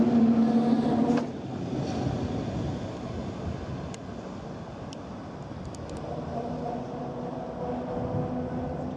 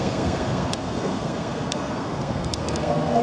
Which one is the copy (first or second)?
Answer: second